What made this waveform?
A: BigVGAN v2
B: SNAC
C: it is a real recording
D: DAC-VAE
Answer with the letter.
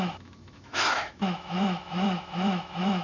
D